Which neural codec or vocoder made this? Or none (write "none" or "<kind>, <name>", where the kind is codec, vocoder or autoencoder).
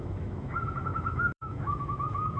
autoencoder, DAC-VAE